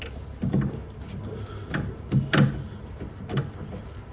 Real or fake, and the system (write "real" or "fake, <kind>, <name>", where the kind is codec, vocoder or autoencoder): real